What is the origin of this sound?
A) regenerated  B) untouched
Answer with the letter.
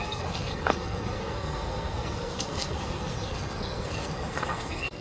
A